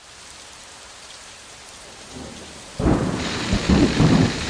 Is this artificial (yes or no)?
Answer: yes